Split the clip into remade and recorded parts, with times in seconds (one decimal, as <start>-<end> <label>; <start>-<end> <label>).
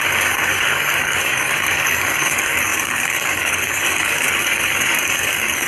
0.0-5.7 remade